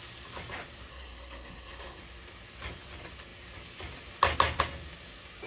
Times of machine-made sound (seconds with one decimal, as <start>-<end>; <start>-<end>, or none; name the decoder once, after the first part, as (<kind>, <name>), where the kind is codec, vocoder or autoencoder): 0.9-2.0 (codec, SNAC)